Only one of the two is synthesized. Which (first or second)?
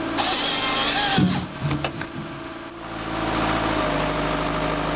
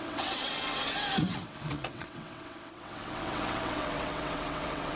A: second